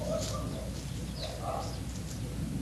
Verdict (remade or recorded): recorded